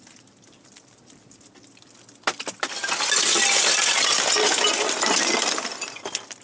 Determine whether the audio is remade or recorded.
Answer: recorded